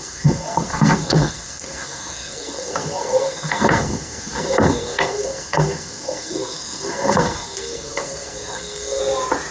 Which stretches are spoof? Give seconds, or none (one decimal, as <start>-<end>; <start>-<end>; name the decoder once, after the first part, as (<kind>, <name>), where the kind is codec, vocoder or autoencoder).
0.0-9.0 (codec, SNAC)